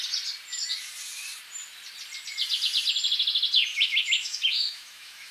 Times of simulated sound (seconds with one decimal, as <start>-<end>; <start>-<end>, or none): 3.7-5.3